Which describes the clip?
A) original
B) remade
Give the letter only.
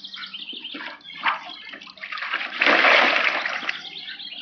A